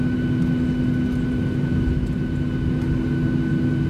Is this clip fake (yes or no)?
no